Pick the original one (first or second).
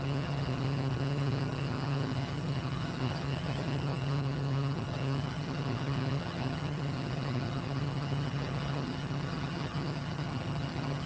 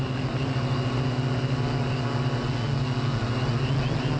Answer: second